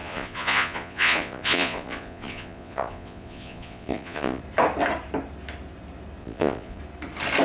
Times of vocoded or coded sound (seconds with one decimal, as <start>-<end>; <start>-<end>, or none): 0.0-4.4; 6.2-6.8